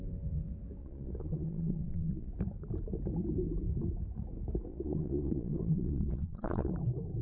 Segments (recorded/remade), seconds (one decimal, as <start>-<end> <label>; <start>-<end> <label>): 0.0-0.8 recorded; 0.8-2.3 remade; 2.3-4.7 recorded; 4.7-6.7 remade; 6.7-7.2 recorded